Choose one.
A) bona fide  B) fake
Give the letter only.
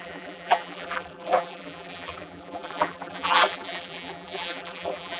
B